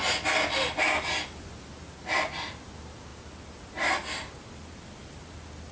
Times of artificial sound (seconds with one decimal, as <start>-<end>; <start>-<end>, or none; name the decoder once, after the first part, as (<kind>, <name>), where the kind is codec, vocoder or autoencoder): 3.1-5.2 (vocoder, BigVGAN v2)